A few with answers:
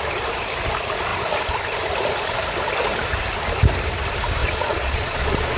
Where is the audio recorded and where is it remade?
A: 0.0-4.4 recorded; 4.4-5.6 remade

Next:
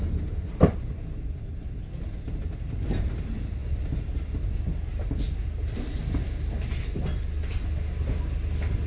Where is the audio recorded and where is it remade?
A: 0.0-8.9 recorded